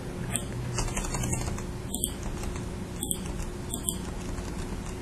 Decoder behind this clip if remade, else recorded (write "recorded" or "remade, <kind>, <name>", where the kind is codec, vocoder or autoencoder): recorded